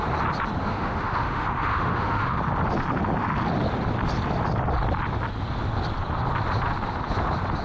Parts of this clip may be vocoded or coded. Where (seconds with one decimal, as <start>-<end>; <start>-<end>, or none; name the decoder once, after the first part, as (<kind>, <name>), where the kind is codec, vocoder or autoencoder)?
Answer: 0.6-2.4 (autoencoder, DAC-VAE)